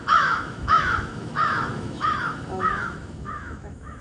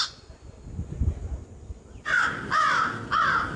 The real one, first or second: second